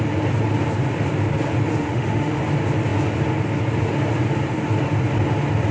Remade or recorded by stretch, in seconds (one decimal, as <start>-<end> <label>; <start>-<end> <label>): 0.0-1.7 recorded; 1.7-2.4 remade; 2.4-5.7 recorded